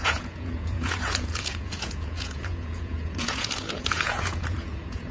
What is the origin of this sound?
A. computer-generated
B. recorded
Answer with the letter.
A